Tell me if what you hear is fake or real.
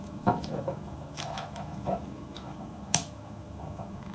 fake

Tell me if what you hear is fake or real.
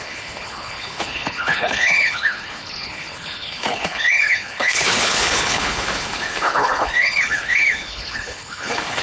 fake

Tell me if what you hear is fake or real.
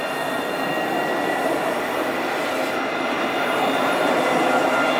real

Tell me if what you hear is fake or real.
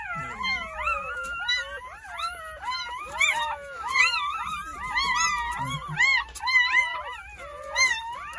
real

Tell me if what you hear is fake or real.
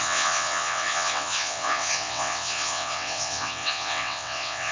fake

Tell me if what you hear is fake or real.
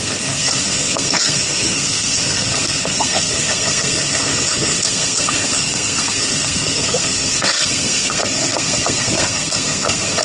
fake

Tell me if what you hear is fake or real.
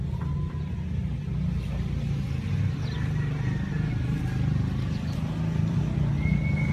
real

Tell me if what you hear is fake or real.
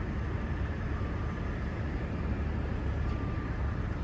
fake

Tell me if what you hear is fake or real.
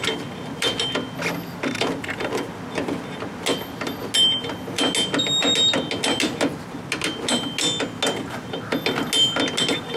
real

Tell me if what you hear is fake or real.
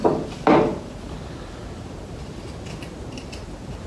real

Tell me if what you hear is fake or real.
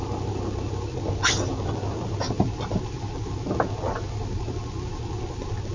real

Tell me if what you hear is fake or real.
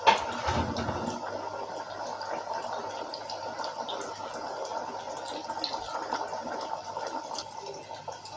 real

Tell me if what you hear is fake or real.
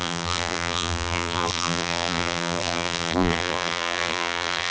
fake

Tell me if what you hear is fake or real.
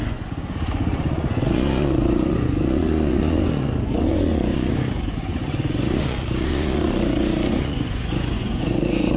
fake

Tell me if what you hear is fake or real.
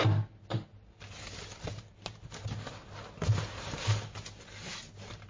real